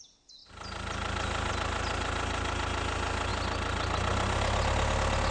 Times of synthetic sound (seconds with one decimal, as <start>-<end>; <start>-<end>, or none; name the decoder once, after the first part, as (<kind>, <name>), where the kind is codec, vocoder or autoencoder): none